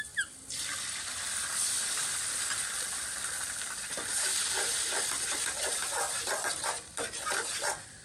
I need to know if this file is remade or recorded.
remade